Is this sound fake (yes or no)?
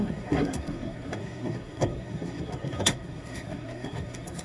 yes